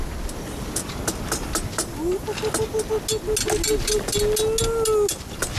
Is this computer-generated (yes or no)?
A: no